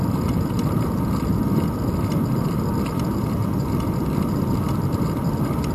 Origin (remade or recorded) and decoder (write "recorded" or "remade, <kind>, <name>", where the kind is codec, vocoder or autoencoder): recorded